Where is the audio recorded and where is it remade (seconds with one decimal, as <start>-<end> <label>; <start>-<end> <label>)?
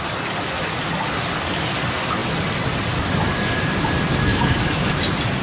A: 0.0-4.3 recorded; 4.3-4.9 remade; 4.9-5.4 recorded